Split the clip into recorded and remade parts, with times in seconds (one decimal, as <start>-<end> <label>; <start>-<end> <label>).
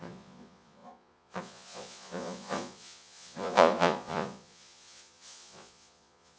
0.0-6.4 remade